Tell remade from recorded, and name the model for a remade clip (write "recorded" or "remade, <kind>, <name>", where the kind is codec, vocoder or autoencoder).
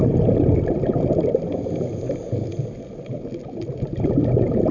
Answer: recorded